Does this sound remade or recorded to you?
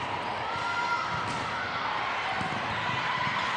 recorded